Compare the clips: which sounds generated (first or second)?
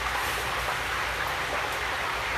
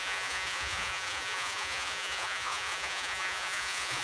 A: second